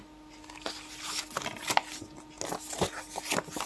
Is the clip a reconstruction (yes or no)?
no